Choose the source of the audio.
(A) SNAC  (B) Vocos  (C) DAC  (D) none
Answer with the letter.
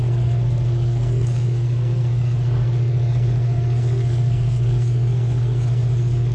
A